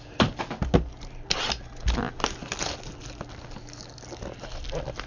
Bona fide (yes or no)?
yes